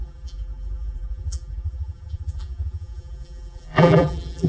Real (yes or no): no